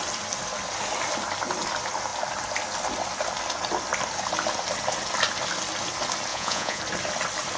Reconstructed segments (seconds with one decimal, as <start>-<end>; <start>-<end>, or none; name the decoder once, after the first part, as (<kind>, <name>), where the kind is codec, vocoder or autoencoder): 6.3-6.8 (vocoder, Vocos)